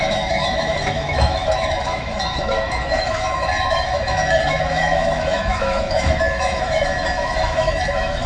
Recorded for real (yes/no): no